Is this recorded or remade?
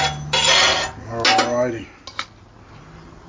recorded